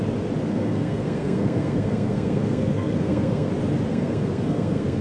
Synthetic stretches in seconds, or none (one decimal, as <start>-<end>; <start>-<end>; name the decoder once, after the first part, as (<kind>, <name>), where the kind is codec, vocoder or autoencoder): 0.5-3.5 (codec, SNAC); 3.9-5.0